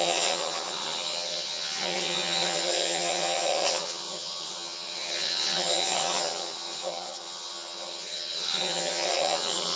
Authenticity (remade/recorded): remade